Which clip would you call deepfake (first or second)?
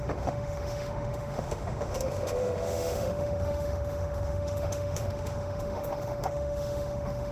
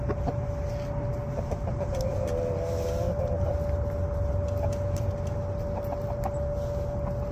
first